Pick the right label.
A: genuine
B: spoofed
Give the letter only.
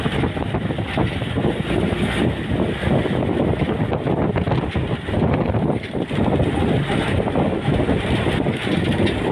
A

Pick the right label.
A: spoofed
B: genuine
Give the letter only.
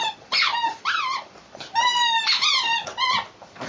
A